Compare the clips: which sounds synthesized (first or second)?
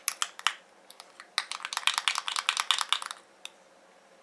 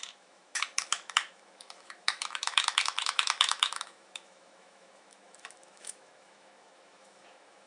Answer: second